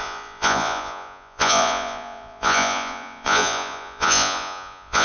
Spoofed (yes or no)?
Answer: yes